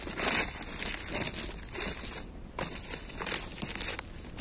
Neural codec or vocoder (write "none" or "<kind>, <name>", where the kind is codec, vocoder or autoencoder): none